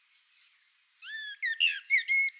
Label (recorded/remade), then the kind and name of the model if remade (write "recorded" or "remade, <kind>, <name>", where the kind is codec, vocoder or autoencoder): recorded